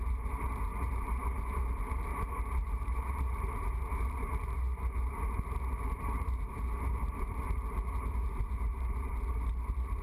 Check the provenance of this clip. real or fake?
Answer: fake